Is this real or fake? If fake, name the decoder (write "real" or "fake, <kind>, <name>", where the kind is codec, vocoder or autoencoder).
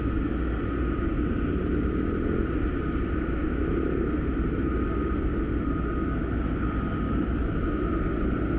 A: real